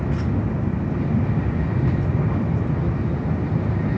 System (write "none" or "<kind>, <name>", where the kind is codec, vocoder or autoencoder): none